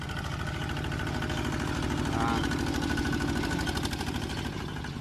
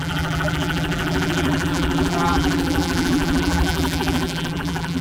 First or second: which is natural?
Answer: first